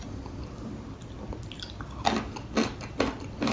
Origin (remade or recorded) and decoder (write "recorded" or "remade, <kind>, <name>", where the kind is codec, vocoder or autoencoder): recorded